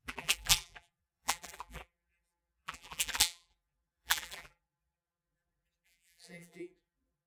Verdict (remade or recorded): remade